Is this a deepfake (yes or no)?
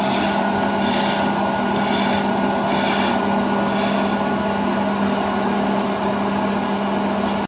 no